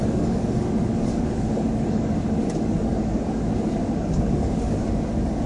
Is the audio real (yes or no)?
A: no